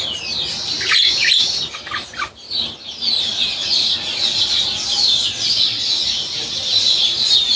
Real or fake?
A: real